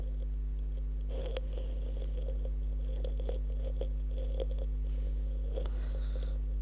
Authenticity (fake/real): real